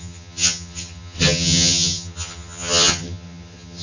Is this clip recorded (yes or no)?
no